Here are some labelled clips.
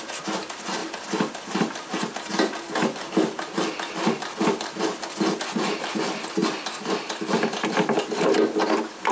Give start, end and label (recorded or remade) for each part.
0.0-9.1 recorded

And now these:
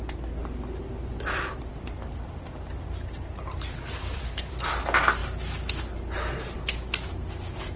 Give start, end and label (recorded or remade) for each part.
0.0-0.4 recorded; 0.4-4.8 remade; 4.8-5.2 recorded; 5.2-5.7 remade; 5.7-7.8 recorded

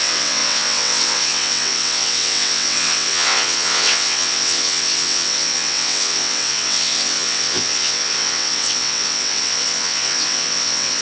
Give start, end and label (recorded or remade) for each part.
0.0-11.0 remade

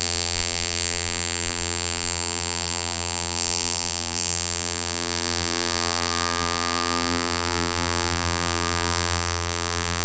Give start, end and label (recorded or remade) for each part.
0.0-10.0 remade